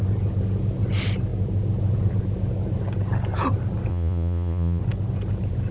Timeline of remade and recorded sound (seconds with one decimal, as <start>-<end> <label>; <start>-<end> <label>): 0.0-3.9 recorded; 3.9-4.8 remade; 4.8-5.7 recorded